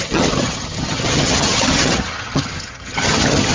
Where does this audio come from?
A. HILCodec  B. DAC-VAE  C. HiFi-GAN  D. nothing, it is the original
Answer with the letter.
C